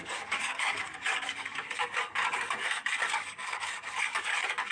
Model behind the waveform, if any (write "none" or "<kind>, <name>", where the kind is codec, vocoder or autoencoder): codec, DAC